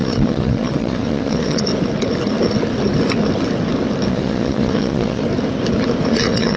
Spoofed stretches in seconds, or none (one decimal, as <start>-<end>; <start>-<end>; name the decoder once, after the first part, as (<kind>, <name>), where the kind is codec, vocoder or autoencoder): 0.0-1.7 (vocoder, Vocos); 4.1-5.2; 6.1-6.6